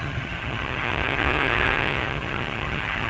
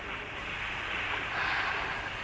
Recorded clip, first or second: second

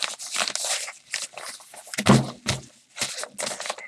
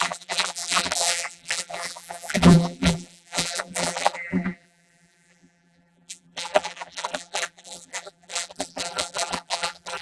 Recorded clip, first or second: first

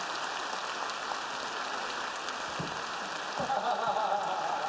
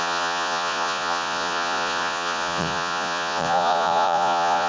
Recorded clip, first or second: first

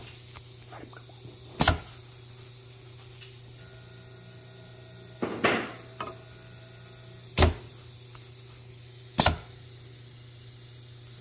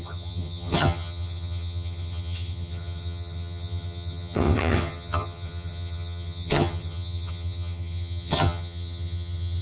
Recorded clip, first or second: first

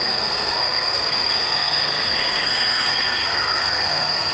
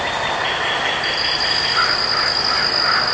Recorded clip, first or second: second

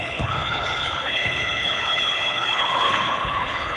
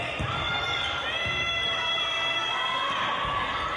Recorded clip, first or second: second